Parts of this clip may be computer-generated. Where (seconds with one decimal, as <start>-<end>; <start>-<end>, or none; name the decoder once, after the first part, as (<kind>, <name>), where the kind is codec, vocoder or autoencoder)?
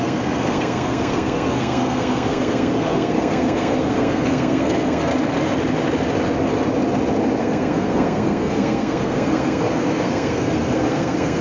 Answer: 0.0-5.1 (codec, SNAC); 7.4-11.4